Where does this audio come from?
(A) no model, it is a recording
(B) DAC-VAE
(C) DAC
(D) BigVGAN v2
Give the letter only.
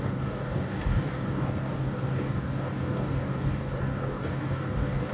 C